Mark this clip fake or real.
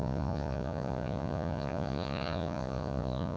fake